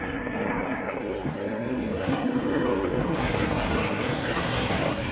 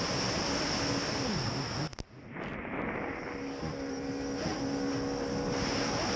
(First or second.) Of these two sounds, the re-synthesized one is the first